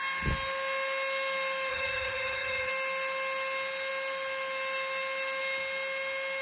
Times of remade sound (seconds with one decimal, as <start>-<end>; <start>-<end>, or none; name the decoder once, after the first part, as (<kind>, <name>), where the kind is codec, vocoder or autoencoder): 1.7-2.7 (vocoder, HiFi-GAN)